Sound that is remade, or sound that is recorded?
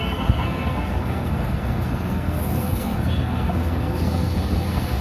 remade